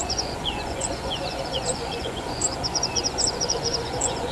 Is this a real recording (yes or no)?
no